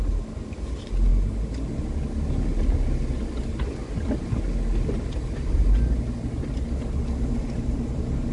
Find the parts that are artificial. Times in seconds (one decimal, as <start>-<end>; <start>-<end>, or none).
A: none